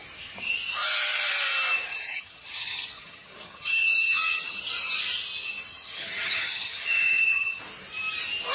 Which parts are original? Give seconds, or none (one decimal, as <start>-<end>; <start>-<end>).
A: 0.0-1.9; 4.6-5.7; 7.6-8.5

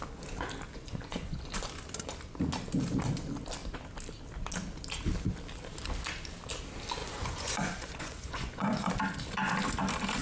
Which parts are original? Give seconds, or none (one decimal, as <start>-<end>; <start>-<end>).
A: 0.0-0.7; 1.4-7.0; 8.9-10.2

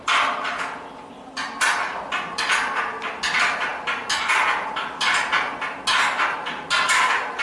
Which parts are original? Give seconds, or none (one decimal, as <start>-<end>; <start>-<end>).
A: 0.0-7.4